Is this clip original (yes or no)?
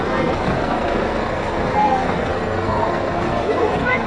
no